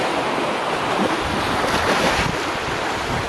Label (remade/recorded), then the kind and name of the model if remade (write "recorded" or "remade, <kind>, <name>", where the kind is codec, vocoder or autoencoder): recorded